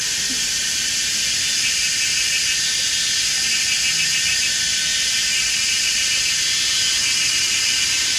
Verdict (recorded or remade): recorded